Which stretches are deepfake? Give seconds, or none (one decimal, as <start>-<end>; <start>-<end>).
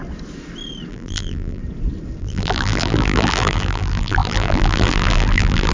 0.9-1.6; 2.2-5.7